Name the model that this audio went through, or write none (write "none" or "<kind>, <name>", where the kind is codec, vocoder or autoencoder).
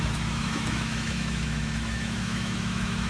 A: autoencoder, DAC-VAE